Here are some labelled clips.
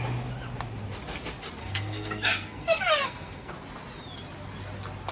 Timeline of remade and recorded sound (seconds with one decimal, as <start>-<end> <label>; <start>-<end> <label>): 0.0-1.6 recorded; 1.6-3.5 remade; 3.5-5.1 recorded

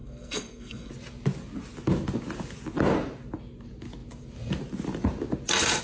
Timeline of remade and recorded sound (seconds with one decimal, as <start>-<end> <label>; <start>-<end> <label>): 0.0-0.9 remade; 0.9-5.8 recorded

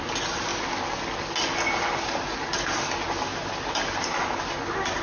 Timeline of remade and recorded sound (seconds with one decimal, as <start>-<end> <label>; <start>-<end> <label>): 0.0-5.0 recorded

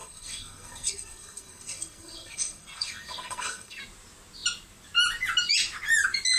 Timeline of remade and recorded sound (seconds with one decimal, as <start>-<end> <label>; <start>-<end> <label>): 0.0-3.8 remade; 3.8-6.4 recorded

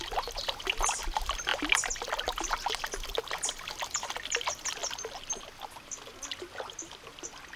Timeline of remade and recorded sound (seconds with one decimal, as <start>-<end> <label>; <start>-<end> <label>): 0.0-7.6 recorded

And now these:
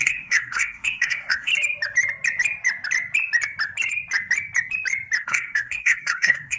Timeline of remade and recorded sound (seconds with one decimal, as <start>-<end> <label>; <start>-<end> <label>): 0.0-1.5 remade; 1.5-5.2 recorded; 5.2-6.6 remade

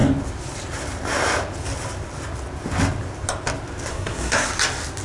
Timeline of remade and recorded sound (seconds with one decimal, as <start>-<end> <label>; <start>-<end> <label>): 0.0-3.9 recorded; 3.9-4.5 remade; 4.5-5.0 recorded

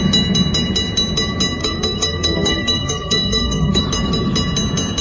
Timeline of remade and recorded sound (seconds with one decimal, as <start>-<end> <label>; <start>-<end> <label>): 0.0-1.6 recorded; 1.6-3.8 remade; 3.8-5.0 recorded